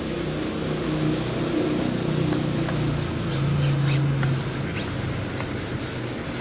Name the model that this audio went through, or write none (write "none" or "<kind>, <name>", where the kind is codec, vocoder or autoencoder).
none